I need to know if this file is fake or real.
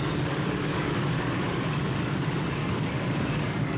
fake